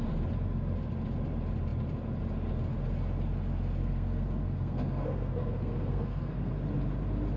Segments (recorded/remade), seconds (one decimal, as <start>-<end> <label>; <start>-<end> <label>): 0.0-3.8 recorded; 3.8-6.6 remade; 6.6-7.4 recorded